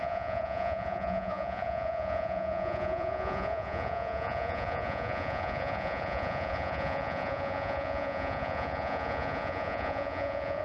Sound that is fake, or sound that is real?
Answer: fake